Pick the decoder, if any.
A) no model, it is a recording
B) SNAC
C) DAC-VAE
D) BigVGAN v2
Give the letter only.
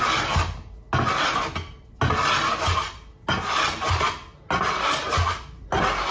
A